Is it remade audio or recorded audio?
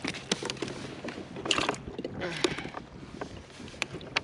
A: recorded